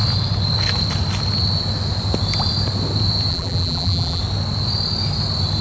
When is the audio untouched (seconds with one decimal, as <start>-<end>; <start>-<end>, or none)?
0.0-3.3; 4.2-5.6

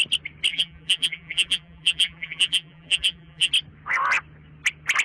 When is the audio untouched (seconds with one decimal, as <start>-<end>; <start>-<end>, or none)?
0.0-0.5; 3.5-5.0

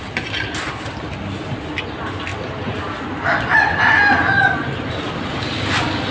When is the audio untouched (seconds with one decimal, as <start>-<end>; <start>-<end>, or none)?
0.0-6.1

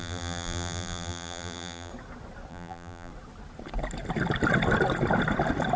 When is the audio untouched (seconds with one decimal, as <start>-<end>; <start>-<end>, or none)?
1.9-2.5; 3.1-5.8

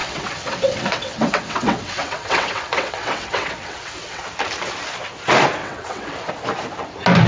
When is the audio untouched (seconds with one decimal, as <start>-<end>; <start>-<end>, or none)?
4.2-5.6; 6.3-7.3

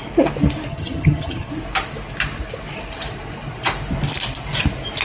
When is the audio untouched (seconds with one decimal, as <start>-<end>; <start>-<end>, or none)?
0.0-0.7; 1.5-5.0